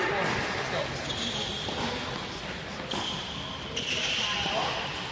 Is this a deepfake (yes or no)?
no